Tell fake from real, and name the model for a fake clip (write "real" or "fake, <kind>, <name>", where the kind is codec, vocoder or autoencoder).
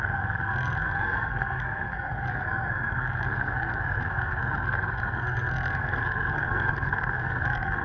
fake, codec, SNAC